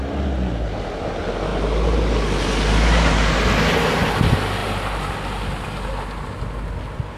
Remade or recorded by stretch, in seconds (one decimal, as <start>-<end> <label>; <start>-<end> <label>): 0.0-7.2 recorded